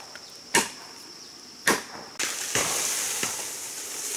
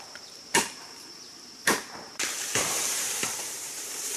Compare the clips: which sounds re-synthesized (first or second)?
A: second